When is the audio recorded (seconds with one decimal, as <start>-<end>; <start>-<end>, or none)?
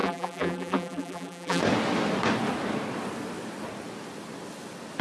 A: 1.6-5.0